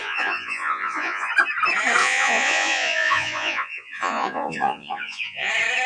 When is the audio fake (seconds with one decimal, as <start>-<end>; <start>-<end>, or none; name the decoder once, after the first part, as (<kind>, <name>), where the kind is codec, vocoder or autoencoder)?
0.0-1.3 (vocoder, Vocos); 2.0-5.5